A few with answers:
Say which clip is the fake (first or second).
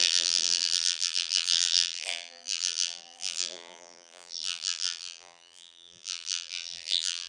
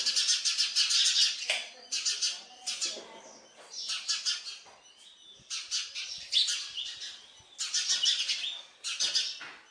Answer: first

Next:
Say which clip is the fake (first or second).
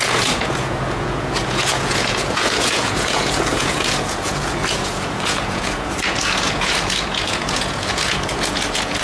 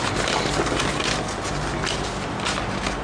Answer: first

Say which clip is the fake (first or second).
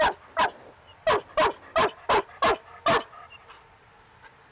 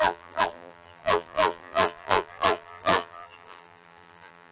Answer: second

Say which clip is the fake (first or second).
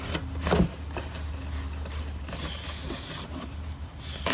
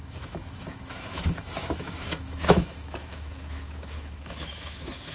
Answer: second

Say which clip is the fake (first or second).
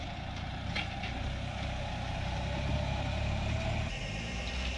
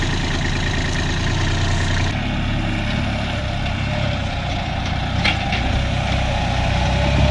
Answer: first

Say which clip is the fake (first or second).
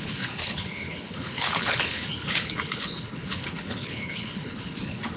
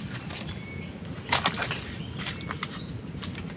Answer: first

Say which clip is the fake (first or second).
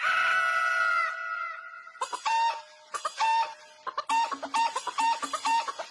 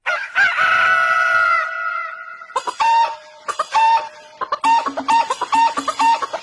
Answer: second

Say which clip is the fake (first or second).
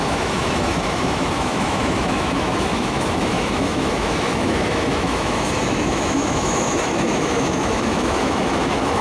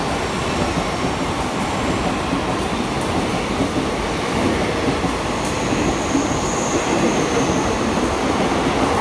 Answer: first